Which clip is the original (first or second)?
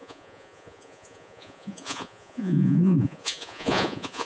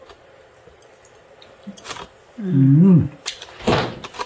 second